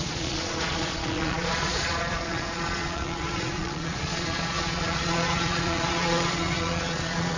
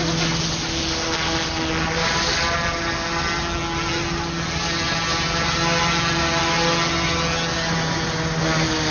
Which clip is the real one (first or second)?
second